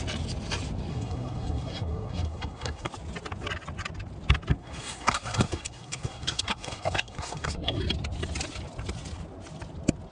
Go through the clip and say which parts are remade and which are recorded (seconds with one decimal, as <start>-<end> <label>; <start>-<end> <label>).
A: 0.0-0.9 recorded; 0.9-2.9 remade; 2.9-4.6 recorded; 4.6-7.8 remade; 7.8-10.1 recorded